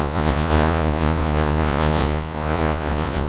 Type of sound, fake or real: fake